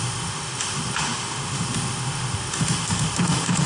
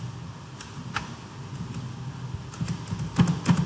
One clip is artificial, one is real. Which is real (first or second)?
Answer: second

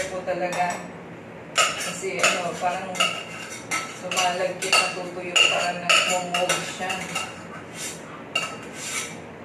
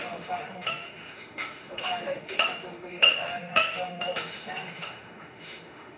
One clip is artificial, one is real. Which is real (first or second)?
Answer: first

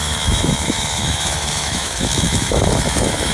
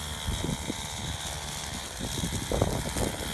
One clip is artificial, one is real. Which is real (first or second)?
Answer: second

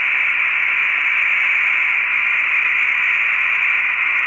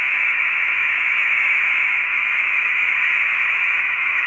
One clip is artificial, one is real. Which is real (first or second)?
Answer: first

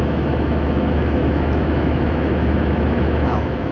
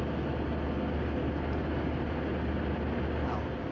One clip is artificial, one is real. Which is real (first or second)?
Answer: second